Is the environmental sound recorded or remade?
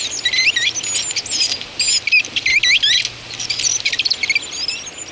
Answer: recorded